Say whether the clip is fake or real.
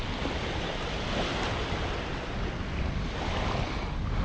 real